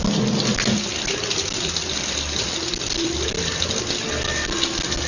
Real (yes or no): yes